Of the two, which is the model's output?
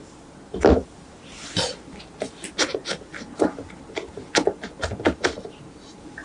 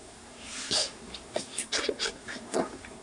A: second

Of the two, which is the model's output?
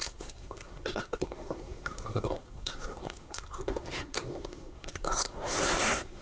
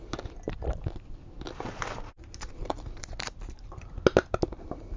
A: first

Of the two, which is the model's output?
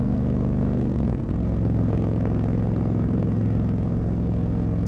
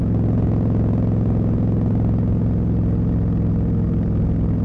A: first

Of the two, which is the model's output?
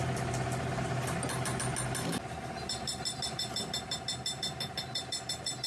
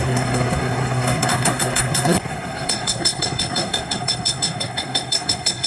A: second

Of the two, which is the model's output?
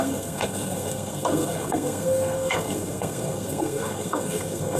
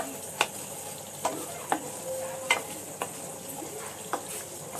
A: first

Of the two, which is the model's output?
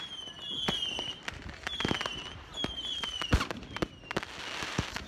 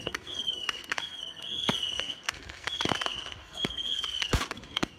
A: second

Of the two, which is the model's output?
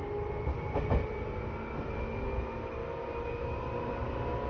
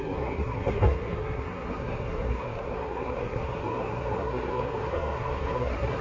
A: second